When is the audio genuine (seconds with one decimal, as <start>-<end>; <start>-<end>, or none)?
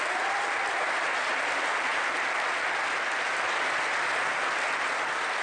0.0-5.4